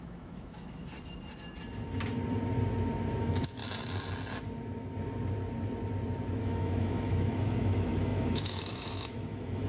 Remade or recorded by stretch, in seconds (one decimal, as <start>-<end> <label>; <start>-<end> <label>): 0.0-0.9 remade; 0.9-3.2 recorded; 3.2-3.6 remade; 3.6-6.4 recorded; 6.4-9.7 remade